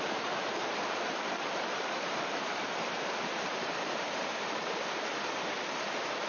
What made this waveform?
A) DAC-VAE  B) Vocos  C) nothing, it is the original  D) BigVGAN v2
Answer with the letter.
D